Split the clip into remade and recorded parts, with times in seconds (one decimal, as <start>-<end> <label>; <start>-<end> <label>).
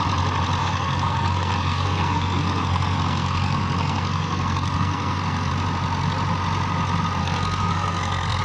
0.0-0.6 recorded; 0.6-5.5 remade; 5.5-7.2 recorded; 7.2-8.4 remade